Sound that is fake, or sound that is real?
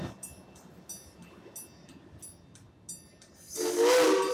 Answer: real